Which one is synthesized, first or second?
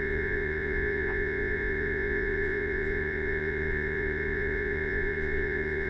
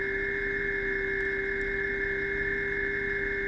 first